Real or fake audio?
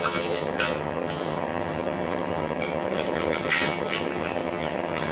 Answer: fake